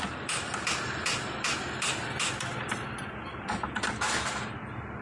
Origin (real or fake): real